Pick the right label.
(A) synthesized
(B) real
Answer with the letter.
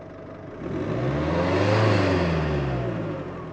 B